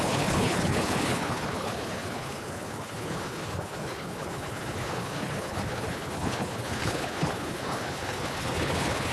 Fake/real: fake